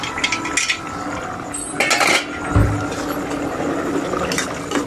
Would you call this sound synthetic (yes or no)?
no